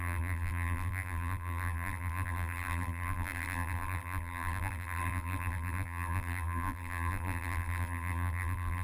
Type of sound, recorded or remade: remade